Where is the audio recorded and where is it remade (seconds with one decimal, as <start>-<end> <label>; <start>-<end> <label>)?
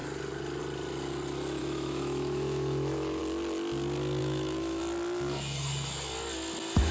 0.0-1.6 recorded; 1.6-3.2 remade; 3.2-4.2 recorded; 4.2-4.8 remade; 4.8-6.9 recorded